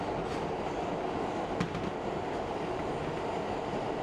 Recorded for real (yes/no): yes